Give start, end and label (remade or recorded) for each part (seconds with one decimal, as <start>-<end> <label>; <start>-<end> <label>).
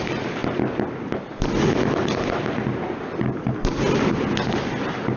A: 0.0-5.2 recorded